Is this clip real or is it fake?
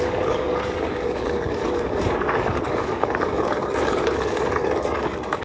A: fake